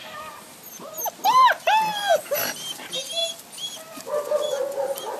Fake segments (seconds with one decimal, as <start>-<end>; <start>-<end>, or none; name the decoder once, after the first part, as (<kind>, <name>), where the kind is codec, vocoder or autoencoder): 0.0-0.8 (vocoder, BigVGAN v2)